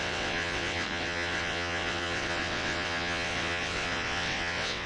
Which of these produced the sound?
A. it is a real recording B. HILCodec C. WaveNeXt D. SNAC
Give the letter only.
C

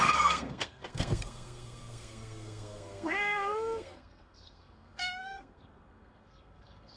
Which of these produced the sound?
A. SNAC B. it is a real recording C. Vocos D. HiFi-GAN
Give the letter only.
A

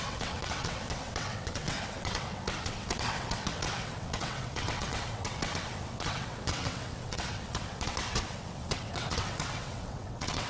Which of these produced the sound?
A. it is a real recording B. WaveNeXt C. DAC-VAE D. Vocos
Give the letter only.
B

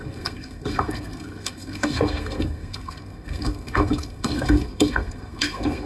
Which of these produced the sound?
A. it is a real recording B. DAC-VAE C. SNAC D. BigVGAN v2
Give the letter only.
C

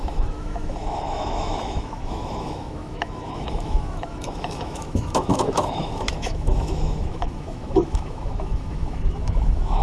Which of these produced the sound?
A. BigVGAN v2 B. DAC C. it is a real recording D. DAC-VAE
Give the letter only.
D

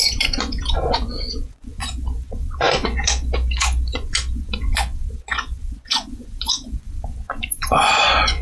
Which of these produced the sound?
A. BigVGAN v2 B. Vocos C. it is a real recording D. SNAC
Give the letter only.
B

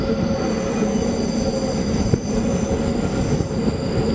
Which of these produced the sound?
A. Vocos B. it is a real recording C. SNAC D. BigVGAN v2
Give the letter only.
B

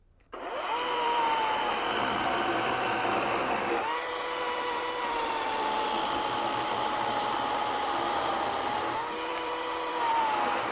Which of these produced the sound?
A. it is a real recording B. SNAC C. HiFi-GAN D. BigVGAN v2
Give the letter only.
D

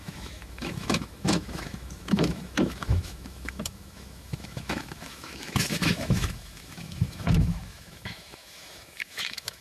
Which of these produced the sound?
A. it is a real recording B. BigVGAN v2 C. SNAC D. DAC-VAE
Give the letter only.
D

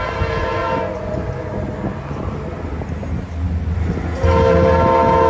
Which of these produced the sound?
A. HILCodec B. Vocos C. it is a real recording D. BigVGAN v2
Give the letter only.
C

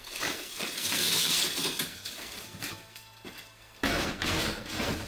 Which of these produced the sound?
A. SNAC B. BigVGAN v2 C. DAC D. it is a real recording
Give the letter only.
A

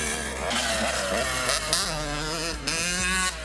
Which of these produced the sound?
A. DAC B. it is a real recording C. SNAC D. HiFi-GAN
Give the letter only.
B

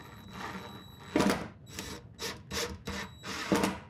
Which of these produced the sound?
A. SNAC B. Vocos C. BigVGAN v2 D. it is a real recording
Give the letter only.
D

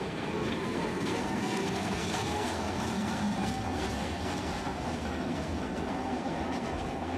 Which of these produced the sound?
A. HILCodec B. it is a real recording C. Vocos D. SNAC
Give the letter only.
D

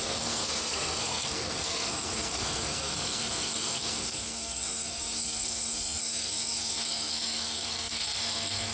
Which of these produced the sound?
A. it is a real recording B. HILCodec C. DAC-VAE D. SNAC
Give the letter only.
D